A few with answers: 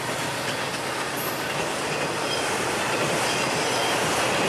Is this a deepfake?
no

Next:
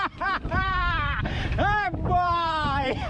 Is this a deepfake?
yes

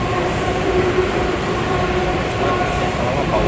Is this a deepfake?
yes